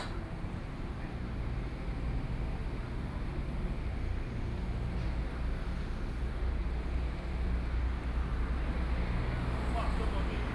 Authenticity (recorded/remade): recorded